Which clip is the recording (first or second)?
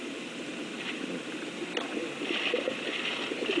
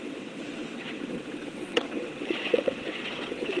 first